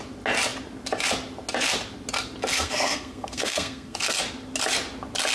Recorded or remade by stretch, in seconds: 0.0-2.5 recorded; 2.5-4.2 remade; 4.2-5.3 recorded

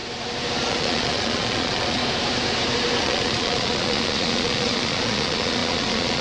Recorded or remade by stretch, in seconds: 0.0-0.6 recorded; 0.6-2.0 remade; 2.0-3.0 recorded; 3.0-6.2 remade